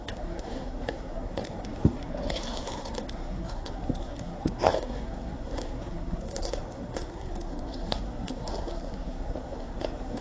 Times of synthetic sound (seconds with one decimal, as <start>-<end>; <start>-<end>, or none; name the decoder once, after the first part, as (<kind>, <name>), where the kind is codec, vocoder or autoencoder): 0.0-10.2 (codec, SNAC)